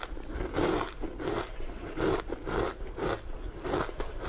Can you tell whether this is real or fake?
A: real